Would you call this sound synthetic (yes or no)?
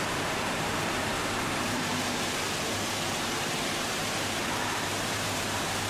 yes